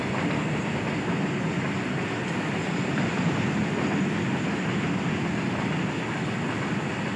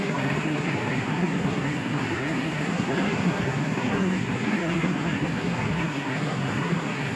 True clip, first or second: first